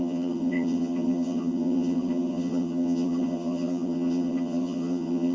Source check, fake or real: fake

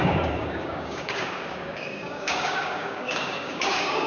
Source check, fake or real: fake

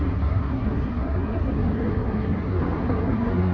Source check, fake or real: fake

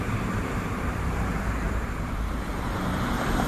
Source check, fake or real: fake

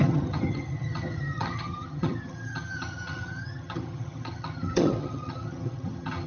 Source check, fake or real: fake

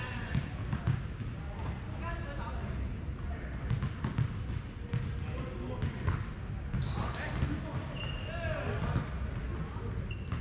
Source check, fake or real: real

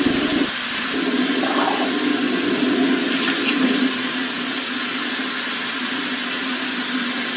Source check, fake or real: real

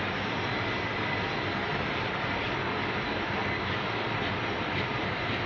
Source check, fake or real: fake